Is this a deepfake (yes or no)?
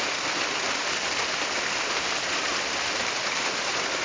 no